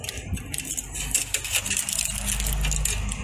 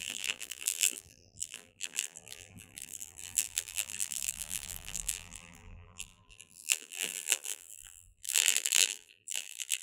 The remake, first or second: second